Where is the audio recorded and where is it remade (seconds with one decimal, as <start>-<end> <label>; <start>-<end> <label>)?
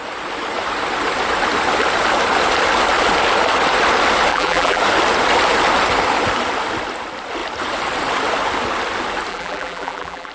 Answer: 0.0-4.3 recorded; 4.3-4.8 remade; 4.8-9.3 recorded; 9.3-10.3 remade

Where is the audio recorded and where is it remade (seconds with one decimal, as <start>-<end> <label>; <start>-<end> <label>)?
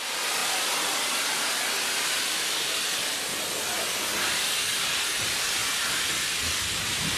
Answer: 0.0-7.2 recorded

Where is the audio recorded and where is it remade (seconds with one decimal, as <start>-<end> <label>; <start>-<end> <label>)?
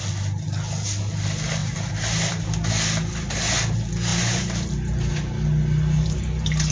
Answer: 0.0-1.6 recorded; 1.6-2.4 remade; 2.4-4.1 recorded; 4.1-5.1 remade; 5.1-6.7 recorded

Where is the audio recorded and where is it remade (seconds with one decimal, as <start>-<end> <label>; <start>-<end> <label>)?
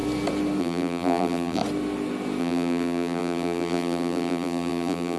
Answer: 0.0-0.6 recorded; 0.6-1.6 remade; 1.6-2.4 recorded; 2.4-5.2 remade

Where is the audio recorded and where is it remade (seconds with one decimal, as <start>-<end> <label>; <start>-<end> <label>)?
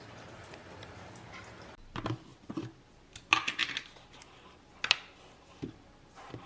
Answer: 0.0-0.6 recorded; 0.6-1.1 remade; 1.1-6.5 recorded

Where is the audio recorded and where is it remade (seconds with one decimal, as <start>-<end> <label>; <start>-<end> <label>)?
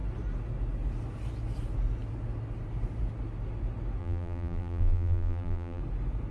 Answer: 0.0-4.0 recorded; 4.0-5.8 remade; 5.8-6.3 recorded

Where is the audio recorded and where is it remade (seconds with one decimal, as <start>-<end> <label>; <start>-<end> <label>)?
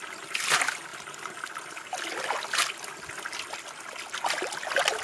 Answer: 0.0-5.0 recorded